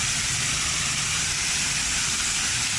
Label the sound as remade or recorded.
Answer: recorded